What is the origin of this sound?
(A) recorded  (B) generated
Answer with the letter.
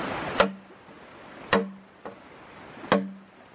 A